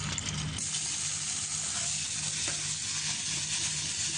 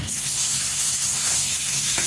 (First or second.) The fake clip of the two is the second